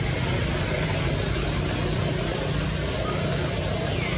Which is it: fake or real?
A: real